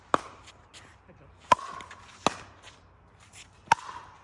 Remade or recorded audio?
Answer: recorded